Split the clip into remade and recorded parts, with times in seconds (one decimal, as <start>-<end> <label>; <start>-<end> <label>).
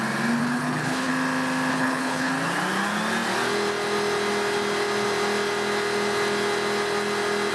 0.0-0.4 recorded; 0.4-1.1 remade; 1.1-1.7 recorded; 1.7-2.3 remade; 2.3-7.5 recorded